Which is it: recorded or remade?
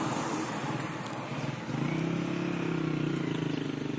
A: recorded